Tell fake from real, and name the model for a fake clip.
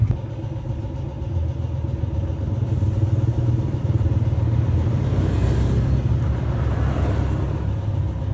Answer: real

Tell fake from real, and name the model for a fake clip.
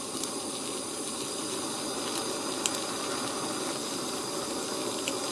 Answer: real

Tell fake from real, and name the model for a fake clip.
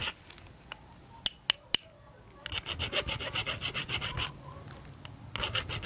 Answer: real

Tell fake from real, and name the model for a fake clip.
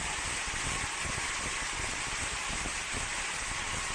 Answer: real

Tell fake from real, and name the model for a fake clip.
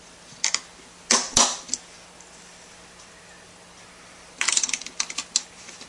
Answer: real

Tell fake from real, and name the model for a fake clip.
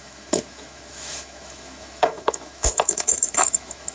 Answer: fake, autoencoder, DAC-VAE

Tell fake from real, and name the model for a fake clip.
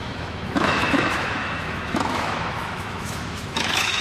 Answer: fake, autoencoder, DAC-VAE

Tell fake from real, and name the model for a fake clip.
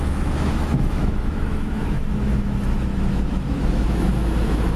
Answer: fake, autoencoder, DAC-VAE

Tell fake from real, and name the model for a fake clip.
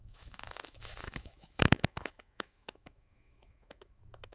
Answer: fake, autoencoder, DAC-VAE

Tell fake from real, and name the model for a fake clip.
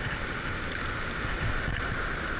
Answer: real